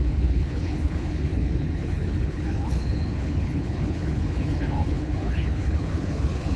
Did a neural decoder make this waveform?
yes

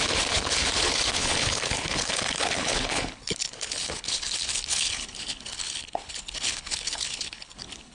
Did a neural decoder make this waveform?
yes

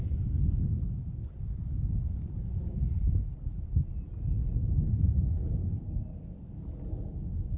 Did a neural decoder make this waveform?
no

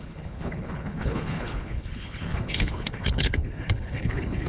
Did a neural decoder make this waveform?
yes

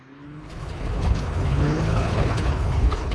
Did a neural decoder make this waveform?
yes